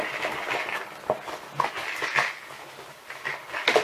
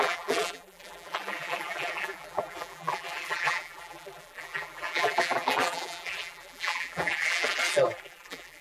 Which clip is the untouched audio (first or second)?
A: first